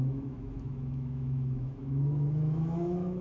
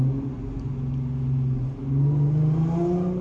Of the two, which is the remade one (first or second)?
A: first